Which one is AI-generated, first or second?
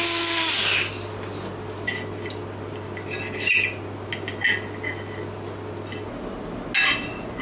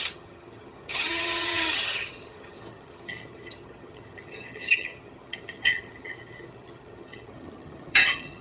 second